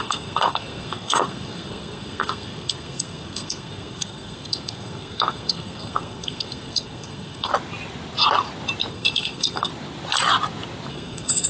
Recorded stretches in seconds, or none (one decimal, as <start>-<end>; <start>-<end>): 7.5-8.9; 9.7-10.9